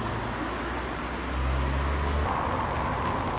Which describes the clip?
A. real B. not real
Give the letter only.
A